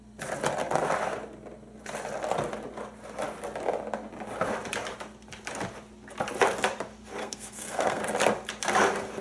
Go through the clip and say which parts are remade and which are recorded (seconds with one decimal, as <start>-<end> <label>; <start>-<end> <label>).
0.0-7.2 recorded; 7.2-8.0 remade; 8.0-9.2 recorded